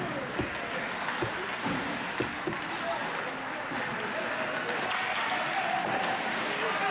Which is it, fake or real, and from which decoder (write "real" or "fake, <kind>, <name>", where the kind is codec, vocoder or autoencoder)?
real